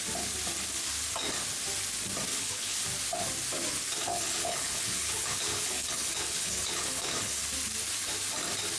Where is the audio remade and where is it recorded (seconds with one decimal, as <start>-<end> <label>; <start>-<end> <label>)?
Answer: 0.0-2.3 recorded; 2.3-2.8 remade; 2.8-4.0 recorded; 4.0-7.4 remade; 7.4-8.8 recorded